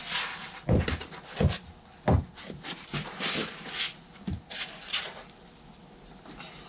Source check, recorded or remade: recorded